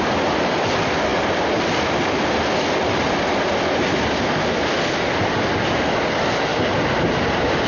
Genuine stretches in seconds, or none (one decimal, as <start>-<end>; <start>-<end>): 0.0-7.7